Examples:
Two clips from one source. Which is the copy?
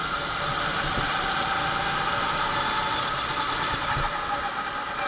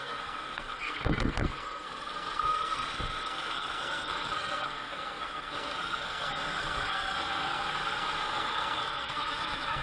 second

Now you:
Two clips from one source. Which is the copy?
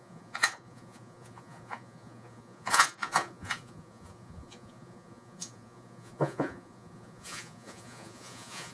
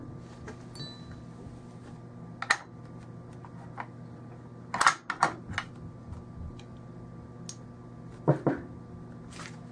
first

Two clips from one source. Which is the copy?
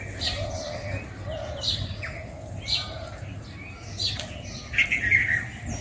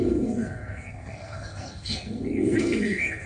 second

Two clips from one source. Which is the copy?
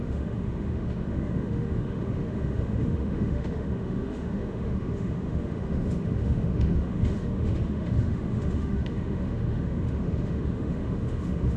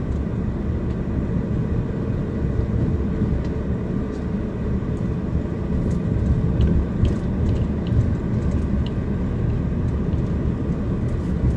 first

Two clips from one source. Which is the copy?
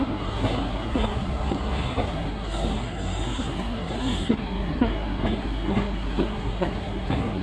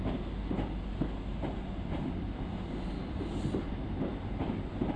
first